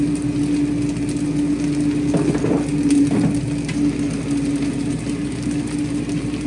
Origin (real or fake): real